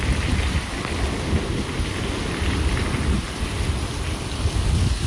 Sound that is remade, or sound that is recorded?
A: recorded